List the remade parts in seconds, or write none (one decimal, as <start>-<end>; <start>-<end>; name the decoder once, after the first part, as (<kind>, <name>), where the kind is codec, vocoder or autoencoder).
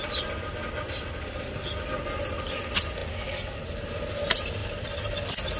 none